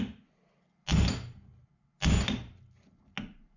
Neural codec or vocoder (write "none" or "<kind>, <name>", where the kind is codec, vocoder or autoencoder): none